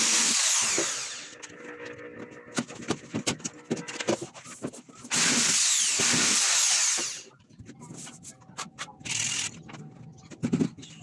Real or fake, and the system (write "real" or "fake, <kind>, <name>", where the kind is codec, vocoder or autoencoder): real